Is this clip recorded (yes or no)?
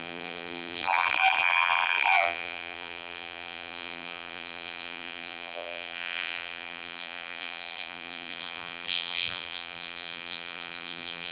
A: no